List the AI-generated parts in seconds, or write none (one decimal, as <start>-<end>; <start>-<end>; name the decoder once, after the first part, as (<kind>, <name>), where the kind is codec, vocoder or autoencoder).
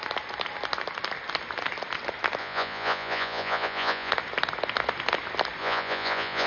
2.4-4.1 (vocoder, Vocos); 5.6-6.5